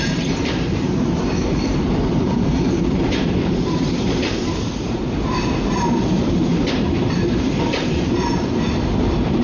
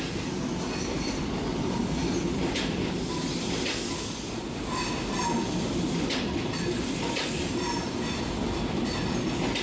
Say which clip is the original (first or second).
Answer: second